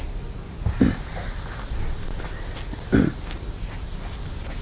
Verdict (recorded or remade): recorded